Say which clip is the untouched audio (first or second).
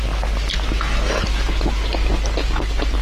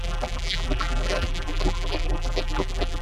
first